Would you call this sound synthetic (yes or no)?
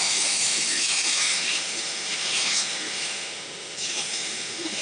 yes